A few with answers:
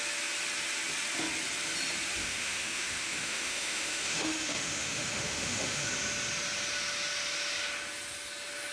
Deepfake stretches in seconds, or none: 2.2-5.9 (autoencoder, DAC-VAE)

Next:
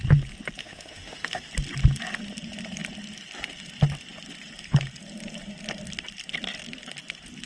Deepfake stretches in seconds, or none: 0.6-1.5 (autoencoder, DAC-VAE)

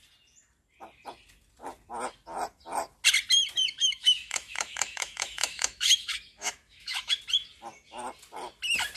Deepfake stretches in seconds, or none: 3.8-7.2 (autoencoder, DAC-VAE)

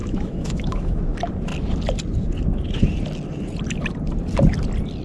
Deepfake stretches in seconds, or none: 0.0-1.0 (autoencoder, DAC-VAE)

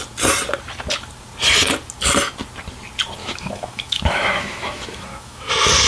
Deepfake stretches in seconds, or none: 3.2-5.5 (autoencoder, DAC-VAE)

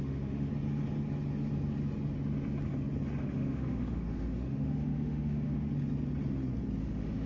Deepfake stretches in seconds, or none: 0.0-0.5 (autoencoder, DAC-VAE); 3.2-5.7; 6.8-7.3

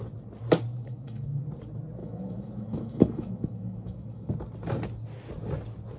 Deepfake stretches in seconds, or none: 0.7-1.4 (autoencoder, DAC-VAE); 2.0-4.3

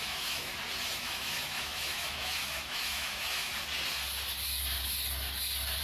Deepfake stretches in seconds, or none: 0.0-0.5 (autoencoder, DAC-VAE); 1.0-3.5